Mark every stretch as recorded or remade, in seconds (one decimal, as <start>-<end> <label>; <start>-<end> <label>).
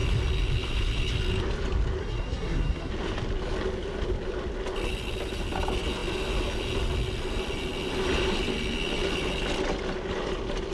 0.0-2.0 recorded; 2.0-2.9 remade; 2.9-10.7 recorded